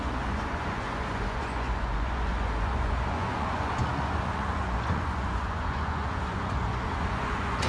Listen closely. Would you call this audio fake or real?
fake